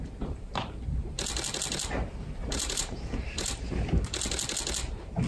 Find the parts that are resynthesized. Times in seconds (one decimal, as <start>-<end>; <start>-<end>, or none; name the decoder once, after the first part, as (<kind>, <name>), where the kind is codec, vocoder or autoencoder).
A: 2.4-3.8 (vocoder, BigVGAN v2)